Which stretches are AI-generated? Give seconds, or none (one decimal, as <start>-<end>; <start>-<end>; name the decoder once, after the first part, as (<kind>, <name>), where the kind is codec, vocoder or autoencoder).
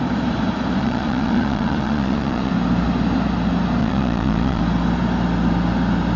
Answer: 0.8-2.5 (vocoder, Vocos); 3.8-4.6